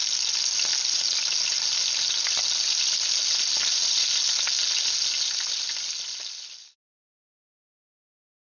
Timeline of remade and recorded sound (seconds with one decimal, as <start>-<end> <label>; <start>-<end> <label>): 0.0-8.5 recorded